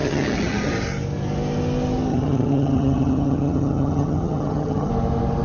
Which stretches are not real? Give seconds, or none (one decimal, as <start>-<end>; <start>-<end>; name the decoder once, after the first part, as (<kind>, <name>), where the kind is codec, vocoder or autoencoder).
0.0-0.7 (vocoder, HiFi-GAN); 2.1-4.9